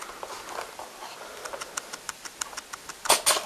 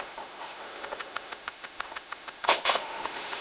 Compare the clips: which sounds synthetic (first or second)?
second